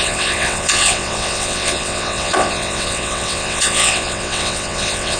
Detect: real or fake fake